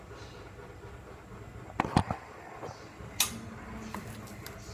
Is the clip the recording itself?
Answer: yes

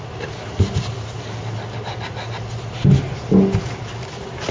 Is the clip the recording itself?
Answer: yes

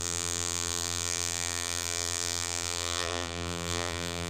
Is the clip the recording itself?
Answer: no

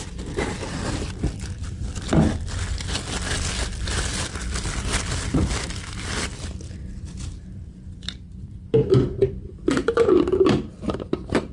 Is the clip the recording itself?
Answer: no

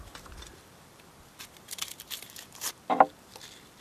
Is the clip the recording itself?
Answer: no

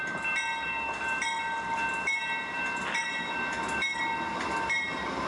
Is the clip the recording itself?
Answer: yes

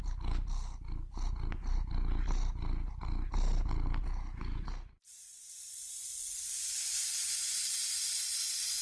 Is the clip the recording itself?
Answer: yes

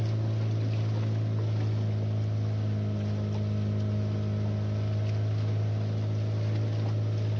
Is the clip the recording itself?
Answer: yes